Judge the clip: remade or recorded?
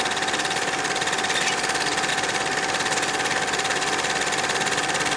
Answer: recorded